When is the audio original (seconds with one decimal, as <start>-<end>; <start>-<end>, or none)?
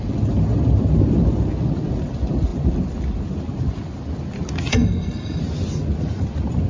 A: 0.0-4.7; 5.4-6.7